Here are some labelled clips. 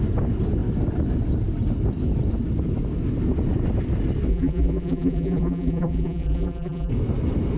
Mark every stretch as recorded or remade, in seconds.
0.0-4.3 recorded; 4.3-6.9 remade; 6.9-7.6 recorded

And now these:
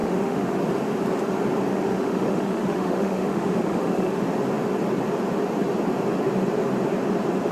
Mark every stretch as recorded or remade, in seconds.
0.0-0.5 remade; 0.5-1.7 recorded; 1.7-4.2 remade; 4.2-7.5 recorded

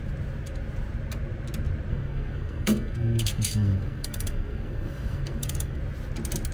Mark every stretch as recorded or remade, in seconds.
0.0-1.9 recorded; 1.9-5.8 remade; 5.8-6.5 recorded

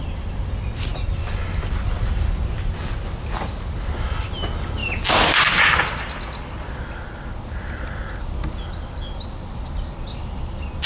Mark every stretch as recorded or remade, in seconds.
0.0-10.9 recorded

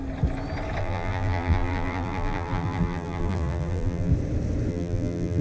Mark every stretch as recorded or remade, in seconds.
0.0-0.8 recorded; 0.8-4.1 remade; 4.1-4.7 recorded; 4.7-5.4 remade

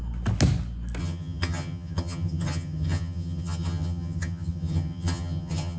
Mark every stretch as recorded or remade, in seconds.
0.0-1.0 recorded; 1.0-5.8 remade

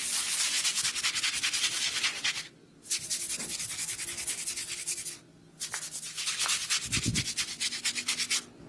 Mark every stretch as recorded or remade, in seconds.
0.0-8.7 recorded

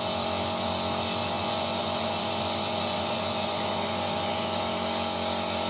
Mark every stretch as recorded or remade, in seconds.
0.0-1.2 recorded; 1.2-4.6 remade; 4.6-5.7 recorded